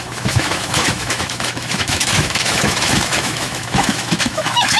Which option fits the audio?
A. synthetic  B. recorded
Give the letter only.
A